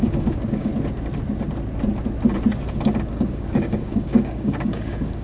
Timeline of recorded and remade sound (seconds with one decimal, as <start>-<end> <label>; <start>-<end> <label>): 0.0-0.7 remade; 0.7-3.1 recorded; 3.1-5.2 remade

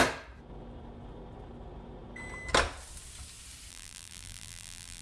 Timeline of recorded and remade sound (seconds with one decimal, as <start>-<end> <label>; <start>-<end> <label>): 0.0-3.7 recorded; 3.7-5.0 remade

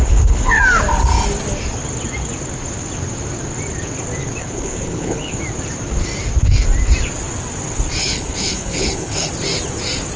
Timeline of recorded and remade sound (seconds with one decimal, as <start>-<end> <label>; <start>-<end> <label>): 0.0-0.6 remade; 0.6-4.4 recorded; 4.4-5.4 remade; 5.4-8.0 recorded; 8.0-9.3 remade; 9.3-10.2 recorded

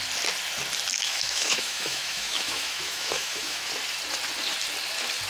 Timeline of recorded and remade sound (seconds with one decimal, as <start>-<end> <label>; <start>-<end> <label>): 0.0-0.9 recorded; 0.9-3.7 remade; 3.7-5.3 recorded

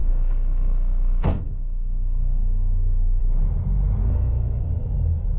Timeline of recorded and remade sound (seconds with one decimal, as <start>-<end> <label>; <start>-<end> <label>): 0.0-3.2 remade; 3.2-4.0 recorded; 4.0-4.7 remade; 4.7-5.4 recorded

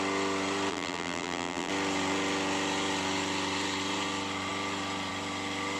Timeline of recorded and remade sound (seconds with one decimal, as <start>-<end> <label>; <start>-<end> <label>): 0.0-0.7 recorded; 0.7-1.7 remade; 1.7-5.8 recorded

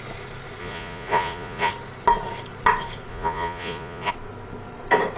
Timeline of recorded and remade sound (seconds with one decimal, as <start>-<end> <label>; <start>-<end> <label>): 0.0-0.6 recorded; 0.6-1.7 remade; 1.7-3.1 recorded; 3.1-4.1 remade; 4.1-5.2 recorded